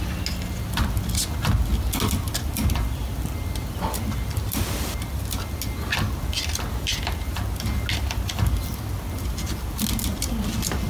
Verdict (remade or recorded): recorded